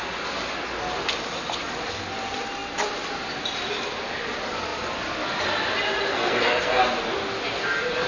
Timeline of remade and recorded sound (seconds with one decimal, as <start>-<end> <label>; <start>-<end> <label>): 0.0-6.1 recorded; 6.1-6.8 remade; 6.8-8.1 recorded